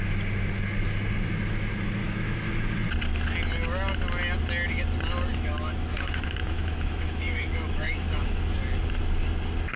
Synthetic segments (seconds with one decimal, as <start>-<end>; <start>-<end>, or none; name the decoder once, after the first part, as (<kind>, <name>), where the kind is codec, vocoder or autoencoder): 2.0-2.7 (autoencoder, DAC-VAE); 5.3-8.6